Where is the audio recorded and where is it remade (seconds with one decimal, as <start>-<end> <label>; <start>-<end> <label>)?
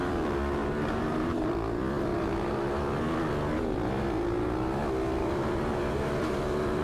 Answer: 0.0-0.6 recorded; 0.6-1.5 remade; 1.5-2.1 recorded; 2.1-2.8 remade; 2.8-5.2 recorded; 5.2-6.8 remade